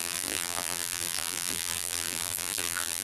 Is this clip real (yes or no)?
no